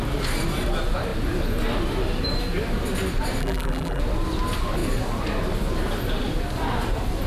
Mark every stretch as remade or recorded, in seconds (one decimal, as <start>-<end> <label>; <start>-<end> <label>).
0.0-3.4 recorded; 3.4-4.0 remade; 4.0-7.3 recorded